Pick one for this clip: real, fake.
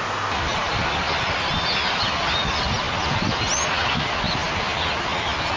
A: real